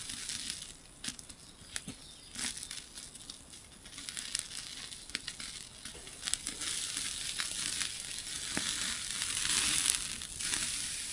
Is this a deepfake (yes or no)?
no